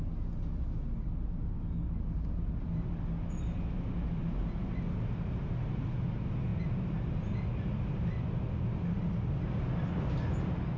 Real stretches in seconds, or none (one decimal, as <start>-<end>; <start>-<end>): 0.0-10.8